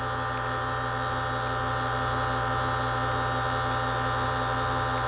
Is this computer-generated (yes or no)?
no